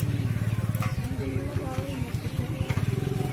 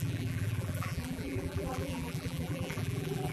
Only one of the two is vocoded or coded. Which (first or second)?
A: second